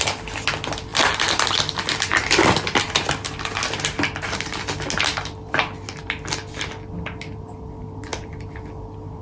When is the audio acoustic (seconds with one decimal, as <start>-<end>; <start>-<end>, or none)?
0.0-9.2